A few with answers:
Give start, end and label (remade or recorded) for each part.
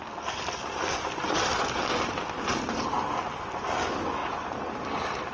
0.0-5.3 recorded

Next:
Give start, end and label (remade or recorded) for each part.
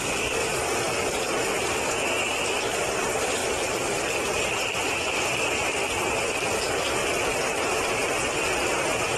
0.0-7.0 recorded; 7.0-8.2 remade; 8.2-9.2 recorded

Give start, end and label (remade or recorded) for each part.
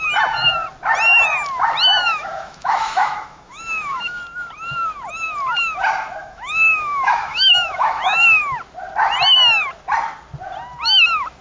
0.0-2.0 recorded; 2.0-4.2 remade; 4.2-6.2 recorded; 6.2-8.4 remade; 8.4-11.4 recorded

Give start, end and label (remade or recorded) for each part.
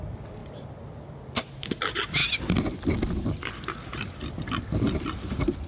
0.0-5.7 recorded